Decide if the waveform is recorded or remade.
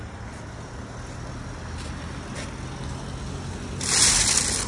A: recorded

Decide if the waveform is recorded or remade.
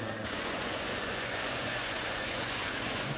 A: remade